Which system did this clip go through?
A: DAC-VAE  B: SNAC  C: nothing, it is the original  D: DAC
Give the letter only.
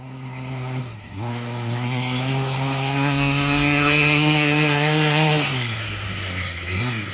B